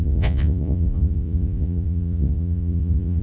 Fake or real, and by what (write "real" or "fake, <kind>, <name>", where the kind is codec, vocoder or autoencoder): fake, vocoder, Vocos